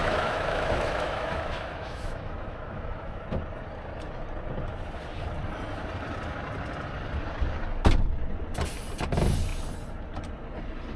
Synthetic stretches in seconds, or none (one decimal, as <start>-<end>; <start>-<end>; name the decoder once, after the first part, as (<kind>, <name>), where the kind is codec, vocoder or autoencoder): 0.0-3.2 (autoencoder, DAC-VAE)